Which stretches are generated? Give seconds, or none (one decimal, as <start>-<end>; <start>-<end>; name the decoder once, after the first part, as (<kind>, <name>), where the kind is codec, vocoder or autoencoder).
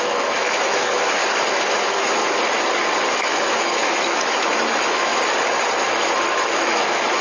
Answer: 0.0-1.2 (autoencoder, DAC-VAE); 1.8-2.2; 3.1-5.1; 6.3-7.2